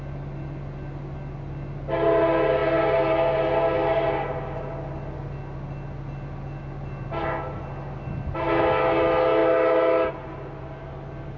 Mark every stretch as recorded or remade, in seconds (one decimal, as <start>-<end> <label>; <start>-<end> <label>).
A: 0.0-11.4 recorded